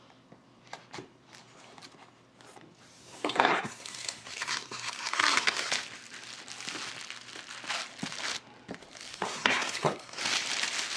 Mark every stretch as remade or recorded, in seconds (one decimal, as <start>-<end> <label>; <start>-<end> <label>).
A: 0.0-3.0 recorded; 3.0-5.7 remade; 5.7-9.1 recorded; 9.1-10.2 remade; 10.2-11.0 recorded